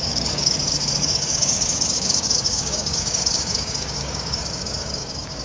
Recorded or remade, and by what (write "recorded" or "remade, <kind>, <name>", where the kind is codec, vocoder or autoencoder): remade, codec, DAC